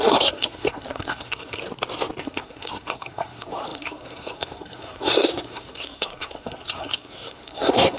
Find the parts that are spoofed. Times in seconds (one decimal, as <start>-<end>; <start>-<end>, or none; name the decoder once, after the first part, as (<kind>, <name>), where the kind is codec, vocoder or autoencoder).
0.0-1.6 (codec, SNAC); 2.2-8.0